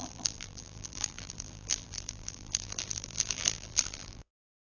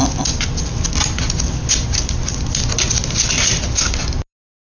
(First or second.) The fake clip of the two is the first